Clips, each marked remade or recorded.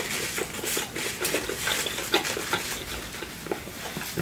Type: recorded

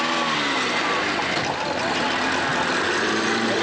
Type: recorded